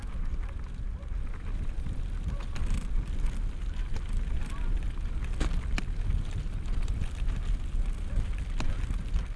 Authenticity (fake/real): real